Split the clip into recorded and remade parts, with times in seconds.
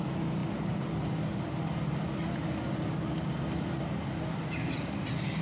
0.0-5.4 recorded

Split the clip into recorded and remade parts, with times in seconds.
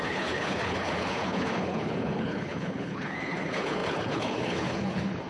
0.0-5.3 remade